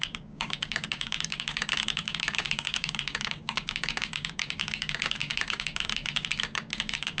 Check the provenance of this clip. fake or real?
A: fake